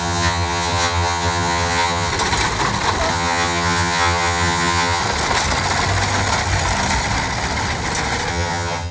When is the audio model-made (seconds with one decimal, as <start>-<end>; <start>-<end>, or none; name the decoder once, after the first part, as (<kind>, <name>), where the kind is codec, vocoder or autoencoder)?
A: 0.0-2.1 (vocoder, HiFi-GAN); 3.1-5.0; 8.3-8.9